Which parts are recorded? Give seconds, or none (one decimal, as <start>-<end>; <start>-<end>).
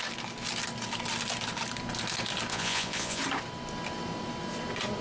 0.0-2.5; 3.2-5.0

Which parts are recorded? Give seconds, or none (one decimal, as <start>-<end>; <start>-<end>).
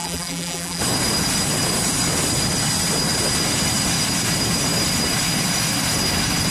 0.8-6.5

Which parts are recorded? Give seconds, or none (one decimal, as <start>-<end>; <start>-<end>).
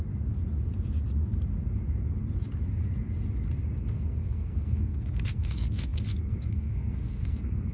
0.0-3.8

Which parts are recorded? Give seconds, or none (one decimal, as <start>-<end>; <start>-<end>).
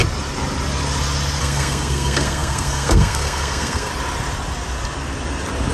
0.0-1.4; 3.9-5.7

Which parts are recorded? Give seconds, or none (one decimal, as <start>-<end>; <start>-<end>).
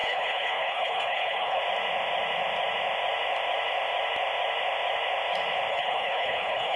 1.6-5.7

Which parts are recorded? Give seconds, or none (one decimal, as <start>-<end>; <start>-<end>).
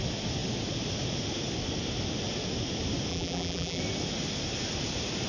0.0-3.1; 3.8-5.3